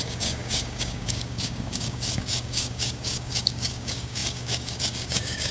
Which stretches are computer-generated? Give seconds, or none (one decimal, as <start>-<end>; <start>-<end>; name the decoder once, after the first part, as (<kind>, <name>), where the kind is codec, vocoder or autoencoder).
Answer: 0.0-5.5 (codec, DAC)